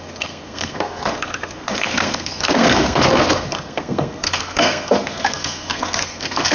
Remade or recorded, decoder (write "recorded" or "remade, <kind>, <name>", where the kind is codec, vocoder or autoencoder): remade, codec, SNAC